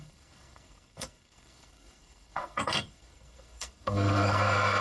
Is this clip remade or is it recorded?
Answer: remade